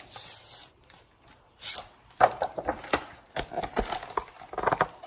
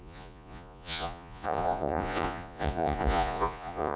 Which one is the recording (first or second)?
first